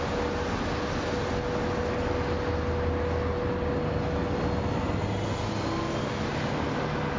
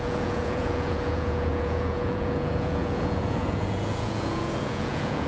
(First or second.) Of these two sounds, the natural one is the first